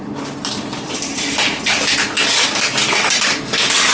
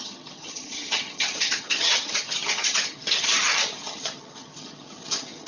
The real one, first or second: first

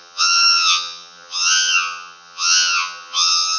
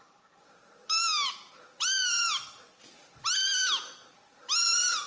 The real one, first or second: second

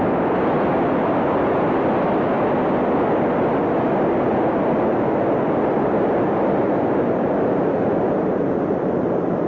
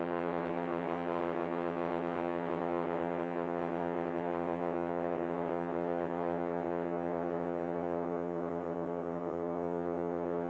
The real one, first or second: first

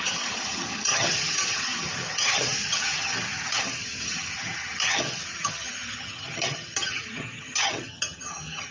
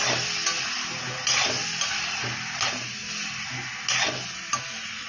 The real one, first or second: second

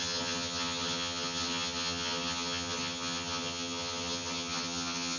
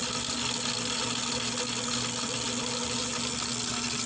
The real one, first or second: second